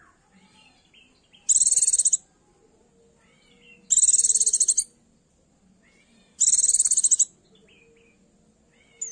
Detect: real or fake real